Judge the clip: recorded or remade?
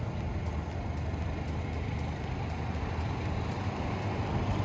recorded